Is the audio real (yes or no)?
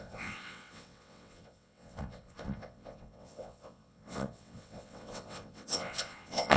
no